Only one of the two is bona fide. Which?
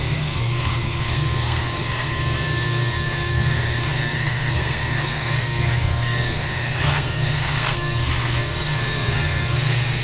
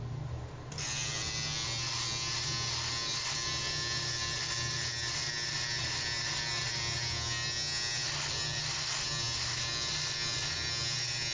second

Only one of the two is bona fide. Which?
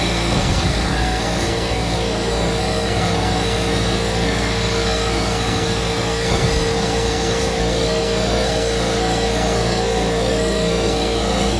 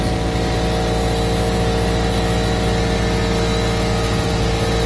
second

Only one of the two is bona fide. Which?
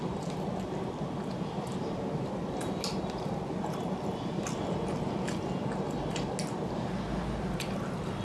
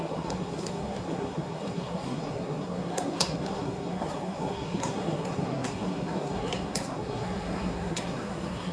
first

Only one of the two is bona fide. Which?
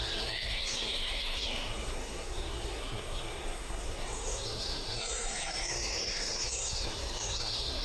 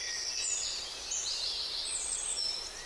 second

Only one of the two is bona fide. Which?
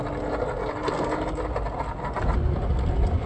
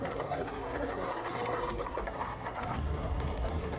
first